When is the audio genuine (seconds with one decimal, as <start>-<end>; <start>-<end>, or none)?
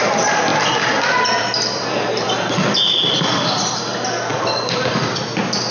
0.0-0.5; 3.2-4.3; 4.9-5.7